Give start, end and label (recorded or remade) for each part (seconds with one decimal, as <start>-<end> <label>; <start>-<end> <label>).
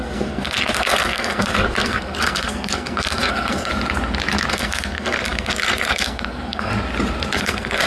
0.0-3.7 remade; 3.7-4.5 recorded; 4.5-6.7 remade; 6.7-7.4 recorded; 7.4-7.9 remade